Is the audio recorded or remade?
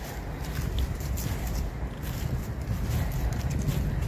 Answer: recorded